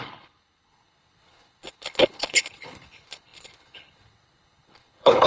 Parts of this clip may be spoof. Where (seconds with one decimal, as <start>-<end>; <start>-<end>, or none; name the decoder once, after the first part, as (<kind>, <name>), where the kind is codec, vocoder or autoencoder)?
0.0-5.3 (codec, HILCodec)